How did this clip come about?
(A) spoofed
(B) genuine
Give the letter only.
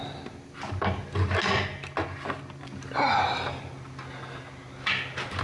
B